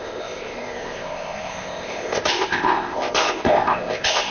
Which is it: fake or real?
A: fake